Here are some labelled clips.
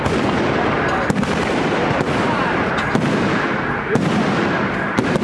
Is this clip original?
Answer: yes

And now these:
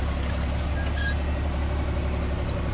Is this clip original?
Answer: yes